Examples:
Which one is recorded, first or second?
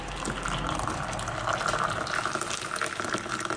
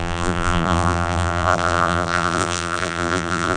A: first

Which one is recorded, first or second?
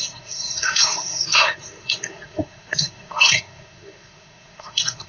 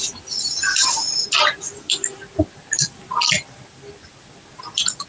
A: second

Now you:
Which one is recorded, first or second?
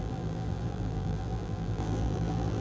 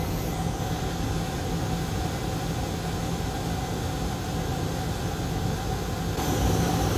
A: second